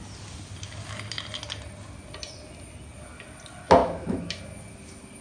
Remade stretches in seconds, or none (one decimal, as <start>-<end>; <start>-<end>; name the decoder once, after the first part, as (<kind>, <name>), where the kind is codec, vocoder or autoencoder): 3.8-4.4 (autoencoder, DAC-VAE)